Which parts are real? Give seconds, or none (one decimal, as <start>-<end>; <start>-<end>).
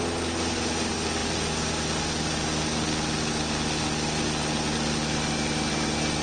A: 0.0-6.2